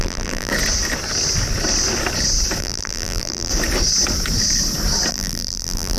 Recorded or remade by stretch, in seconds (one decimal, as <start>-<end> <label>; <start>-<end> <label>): 0.0-0.5 remade; 0.5-2.6 recorded; 2.6-3.5 remade; 3.5-5.1 recorded; 5.1-6.0 remade